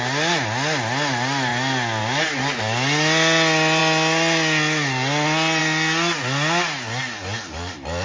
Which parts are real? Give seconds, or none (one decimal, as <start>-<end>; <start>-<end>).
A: 0.0-8.0